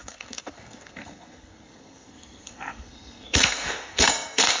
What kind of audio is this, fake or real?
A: fake